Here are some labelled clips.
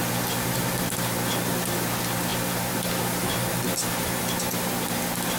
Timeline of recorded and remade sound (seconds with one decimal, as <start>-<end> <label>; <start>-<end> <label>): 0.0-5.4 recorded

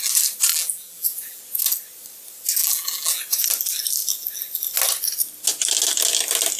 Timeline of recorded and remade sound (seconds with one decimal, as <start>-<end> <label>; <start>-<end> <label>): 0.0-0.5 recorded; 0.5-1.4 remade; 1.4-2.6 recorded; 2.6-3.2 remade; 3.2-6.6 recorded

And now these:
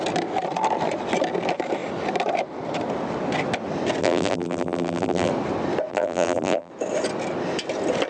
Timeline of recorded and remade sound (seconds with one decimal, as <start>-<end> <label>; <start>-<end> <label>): 0.0-4.0 recorded; 4.0-5.3 remade; 5.3-5.9 recorded; 5.9-6.7 remade; 6.7-8.1 recorded

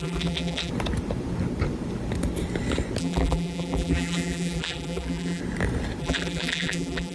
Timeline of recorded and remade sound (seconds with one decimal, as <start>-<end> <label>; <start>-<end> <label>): 0.0-0.7 remade; 0.7-3.0 recorded; 3.0-5.4 remade; 5.4-6.0 recorded; 6.0-7.1 remade

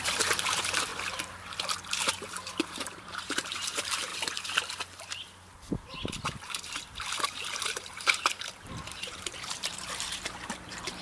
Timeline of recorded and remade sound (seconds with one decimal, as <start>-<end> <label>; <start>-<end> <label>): 0.0-0.9 remade; 0.9-2.0 recorded; 2.0-4.1 remade; 4.1-7.2 recorded; 7.2-11.0 remade

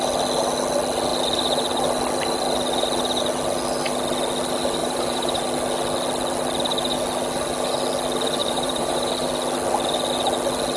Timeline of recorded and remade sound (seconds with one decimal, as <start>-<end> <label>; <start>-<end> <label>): 0.0-4.8 recorded; 4.8-5.4 remade; 5.4-8.4 recorded; 8.4-9.1 remade; 9.1-10.8 recorded

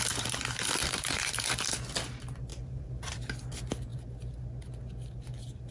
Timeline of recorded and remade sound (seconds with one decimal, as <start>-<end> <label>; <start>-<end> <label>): 0.0-0.8 recorded; 0.8-1.4 remade; 1.4-2.5 recorded; 2.5-3.3 remade; 3.3-5.7 recorded